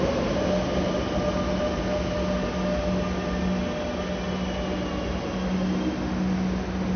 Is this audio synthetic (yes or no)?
no